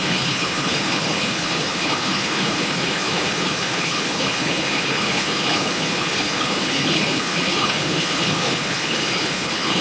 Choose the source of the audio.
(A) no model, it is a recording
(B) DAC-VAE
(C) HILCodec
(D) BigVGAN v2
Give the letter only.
C